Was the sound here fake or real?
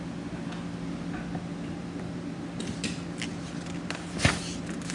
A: real